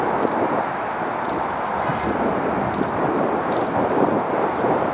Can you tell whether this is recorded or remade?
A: recorded